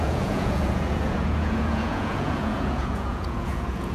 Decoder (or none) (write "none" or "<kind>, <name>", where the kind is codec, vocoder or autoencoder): vocoder, Vocos